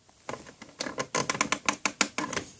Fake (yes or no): no